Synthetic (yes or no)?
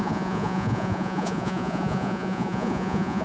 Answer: yes